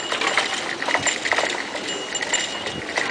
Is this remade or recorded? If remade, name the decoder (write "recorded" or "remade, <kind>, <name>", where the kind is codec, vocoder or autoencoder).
recorded